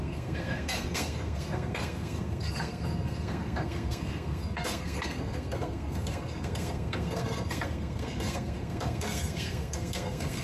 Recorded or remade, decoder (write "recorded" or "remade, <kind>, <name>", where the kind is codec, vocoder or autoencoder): remade, codec, SNAC